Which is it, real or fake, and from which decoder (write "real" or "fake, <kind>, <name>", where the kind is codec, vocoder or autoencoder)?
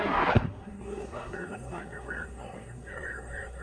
fake, codec, SNAC